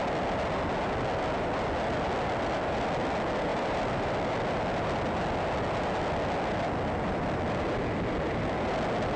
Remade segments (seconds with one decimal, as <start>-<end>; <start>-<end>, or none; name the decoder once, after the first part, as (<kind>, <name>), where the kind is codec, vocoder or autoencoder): 3.5-4.1 (vocoder, BigVGAN v2)